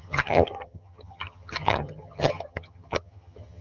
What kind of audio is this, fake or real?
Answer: fake